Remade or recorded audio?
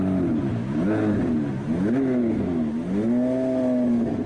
recorded